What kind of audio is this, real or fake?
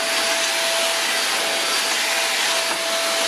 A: real